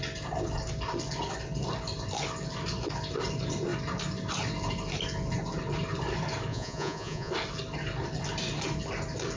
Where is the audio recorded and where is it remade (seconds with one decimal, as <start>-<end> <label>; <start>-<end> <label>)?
0.0-6.5 recorded; 6.5-7.3 remade; 7.3-9.4 recorded